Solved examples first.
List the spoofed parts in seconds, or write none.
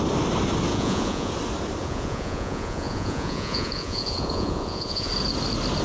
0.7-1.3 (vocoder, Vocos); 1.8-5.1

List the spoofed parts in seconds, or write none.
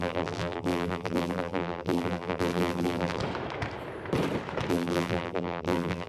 0.0-3.2 (vocoder, BigVGAN v2); 4.7-6.1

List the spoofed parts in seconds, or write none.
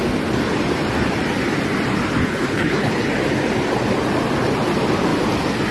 2.2-3.1 (codec, HILCodec)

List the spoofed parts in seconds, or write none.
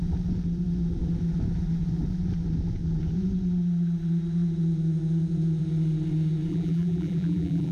6.5-7.7 (vocoder, BigVGAN v2)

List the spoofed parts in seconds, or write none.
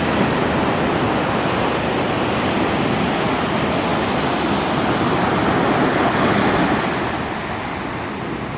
5.9-6.4 (codec, HILCodec)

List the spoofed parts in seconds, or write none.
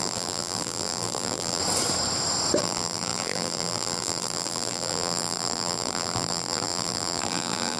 0.0-1.6 (vocoder, BigVGAN v2); 2.6-7.8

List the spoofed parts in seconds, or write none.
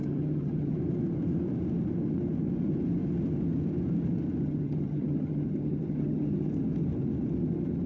0.0-0.8 (vocoder, HiFi-GAN); 4.4-6.5